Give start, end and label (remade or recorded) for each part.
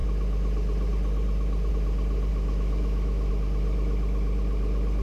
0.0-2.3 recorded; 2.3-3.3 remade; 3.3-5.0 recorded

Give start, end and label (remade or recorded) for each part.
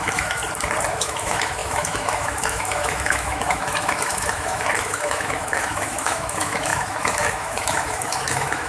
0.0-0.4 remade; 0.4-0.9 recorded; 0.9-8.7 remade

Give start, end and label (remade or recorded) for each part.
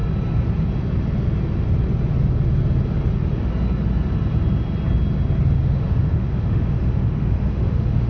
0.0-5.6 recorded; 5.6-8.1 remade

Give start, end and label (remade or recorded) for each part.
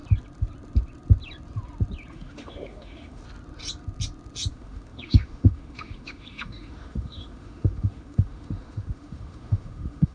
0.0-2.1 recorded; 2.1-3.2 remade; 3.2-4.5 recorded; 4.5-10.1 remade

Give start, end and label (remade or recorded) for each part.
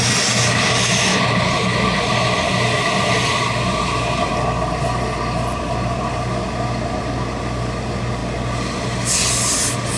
0.0-10.0 recorded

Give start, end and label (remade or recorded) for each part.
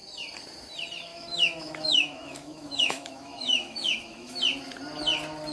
0.0-1.1 recorded; 1.1-4.4 remade; 4.4-5.5 recorded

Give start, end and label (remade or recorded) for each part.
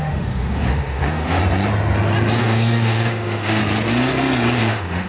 0.0-1.4 remade; 1.4-2.4 recorded; 2.4-3.6 remade; 3.6-4.6 recorded; 4.6-5.1 remade